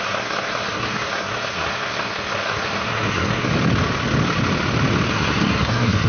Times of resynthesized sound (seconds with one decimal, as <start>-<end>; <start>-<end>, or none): 0.0-3.5; 5.1-6.1